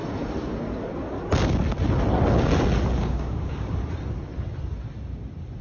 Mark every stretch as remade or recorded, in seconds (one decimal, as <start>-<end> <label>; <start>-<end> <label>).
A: 0.0-3.0 recorded; 3.0-3.7 remade; 3.7-5.6 recorded